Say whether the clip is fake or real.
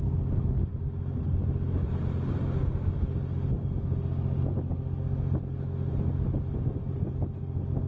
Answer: real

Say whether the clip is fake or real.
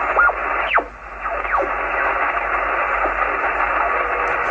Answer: real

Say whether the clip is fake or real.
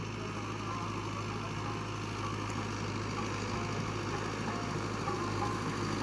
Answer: real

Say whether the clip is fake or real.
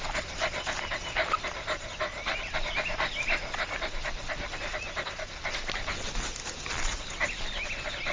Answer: real